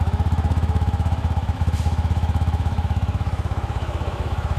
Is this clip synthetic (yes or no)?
yes